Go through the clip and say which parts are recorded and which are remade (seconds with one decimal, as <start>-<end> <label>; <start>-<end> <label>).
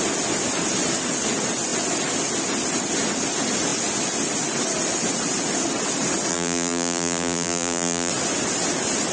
0.0-6.3 recorded; 6.3-8.1 remade; 8.1-9.1 recorded